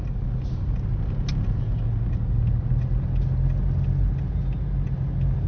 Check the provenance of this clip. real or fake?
real